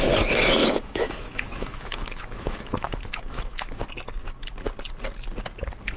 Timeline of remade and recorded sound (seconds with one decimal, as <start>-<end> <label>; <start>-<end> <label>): 0.0-0.6 recorded; 0.6-3.8 remade; 3.8-6.0 recorded